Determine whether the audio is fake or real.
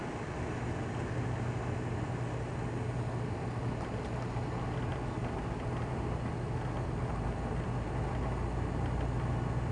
real